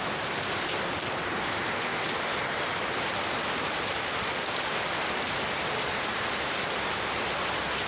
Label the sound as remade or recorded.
remade